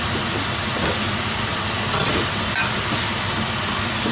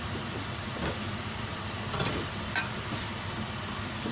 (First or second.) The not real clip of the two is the second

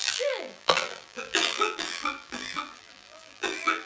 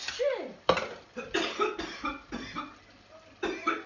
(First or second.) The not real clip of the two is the first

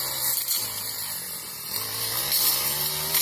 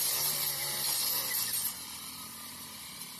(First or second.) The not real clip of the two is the second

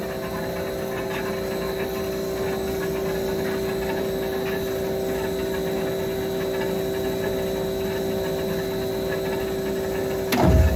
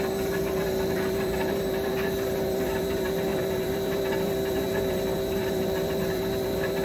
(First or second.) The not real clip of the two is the second